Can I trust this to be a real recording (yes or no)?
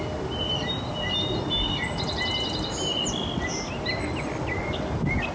yes